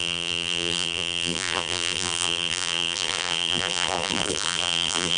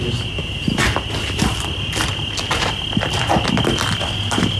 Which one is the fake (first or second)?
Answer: first